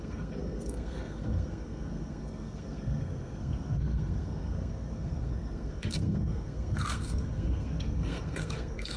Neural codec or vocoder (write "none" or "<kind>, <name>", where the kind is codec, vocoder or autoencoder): codec, SNAC